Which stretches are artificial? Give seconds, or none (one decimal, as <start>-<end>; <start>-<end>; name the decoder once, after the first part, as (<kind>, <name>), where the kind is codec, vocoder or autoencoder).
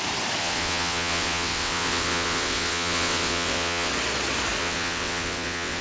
0.4-3.9 (vocoder, WaveNeXt); 4.6-5.8